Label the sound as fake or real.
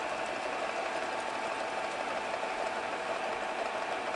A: real